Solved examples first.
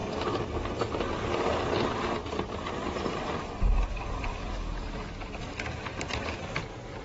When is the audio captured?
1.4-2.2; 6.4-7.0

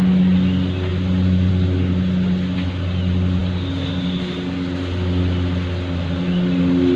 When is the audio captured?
0.0-7.0

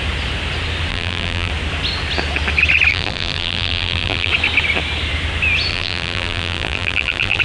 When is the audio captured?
0.0-0.9; 1.5-2.9; 4.3-5.7

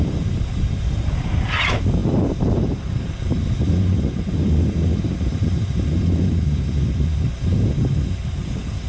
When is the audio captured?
0.0-8.9

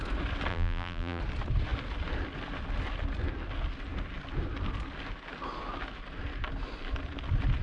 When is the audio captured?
0.0-0.5; 1.2-7.6

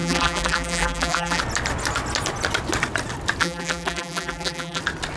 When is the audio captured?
1.4-3.4; 4.8-5.2

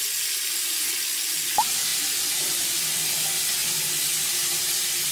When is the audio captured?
0.0-1.9; 3.0-3.6

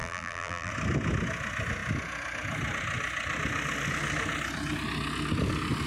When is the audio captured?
0.7-5.9